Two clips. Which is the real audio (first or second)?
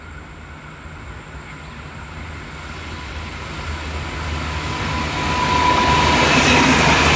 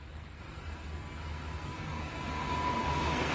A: first